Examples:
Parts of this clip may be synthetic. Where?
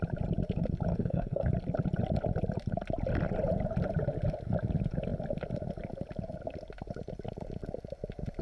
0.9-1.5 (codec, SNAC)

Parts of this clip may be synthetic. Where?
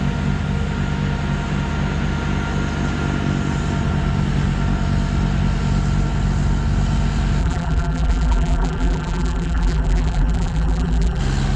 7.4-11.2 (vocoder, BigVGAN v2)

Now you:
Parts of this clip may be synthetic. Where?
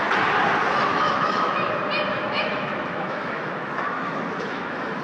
0.9-1.5 (autoencoder, DAC-VAE); 2.1-5.0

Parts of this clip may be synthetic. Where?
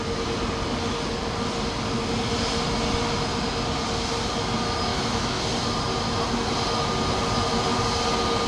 4.9-5.4 (autoencoder, DAC-VAE)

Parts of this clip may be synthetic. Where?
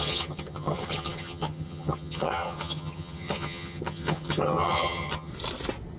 0.0-5.3 (vocoder, HiFi-GAN)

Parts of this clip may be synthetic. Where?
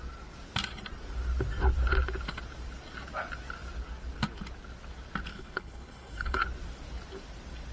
5.3-6.4 (codec, HILCodec)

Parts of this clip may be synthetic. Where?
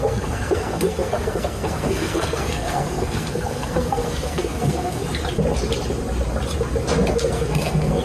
0.0-5.0 (codec, SNAC); 7.1-8.0